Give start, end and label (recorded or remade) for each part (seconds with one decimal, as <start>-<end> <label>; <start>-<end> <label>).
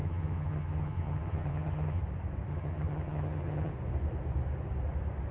0.0-2.0 remade; 2.0-2.5 recorded; 2.5-3.7 remade; 3.7-5.3 recorded